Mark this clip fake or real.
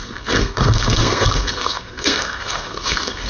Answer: fake